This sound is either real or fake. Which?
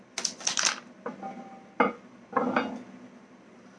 real